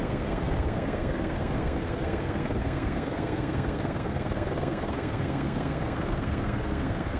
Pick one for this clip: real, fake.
fake